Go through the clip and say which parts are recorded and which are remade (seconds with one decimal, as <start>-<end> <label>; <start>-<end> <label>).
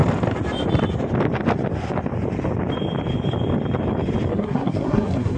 0.0-4.3 recorded; 4.3-5.4 remade